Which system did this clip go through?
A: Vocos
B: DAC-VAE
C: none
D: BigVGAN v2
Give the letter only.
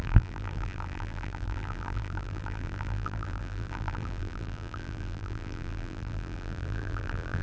D